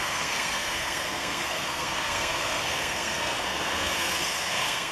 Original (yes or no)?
no